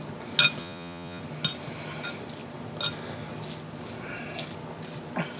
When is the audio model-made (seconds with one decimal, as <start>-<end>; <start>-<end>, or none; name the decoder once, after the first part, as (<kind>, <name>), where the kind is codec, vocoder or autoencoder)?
0.6-1.2 (vocoder, Vocos)